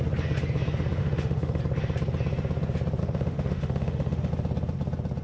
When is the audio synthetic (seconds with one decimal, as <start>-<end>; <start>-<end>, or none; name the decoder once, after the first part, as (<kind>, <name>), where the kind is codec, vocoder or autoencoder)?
1.0-1.6 (autoencoder, DAC-VAE); 3.0-4.3